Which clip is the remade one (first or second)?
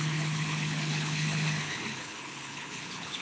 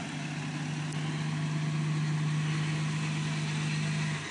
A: first